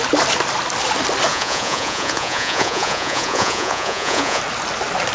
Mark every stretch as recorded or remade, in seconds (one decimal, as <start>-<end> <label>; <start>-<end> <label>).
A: 0.0-1.3 recorded; 1.3-4.4 remade; 4.4-5.1 recorded